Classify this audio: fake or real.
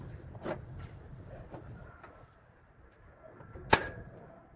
real